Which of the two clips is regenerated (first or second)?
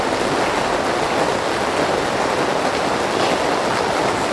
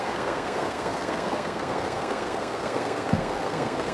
second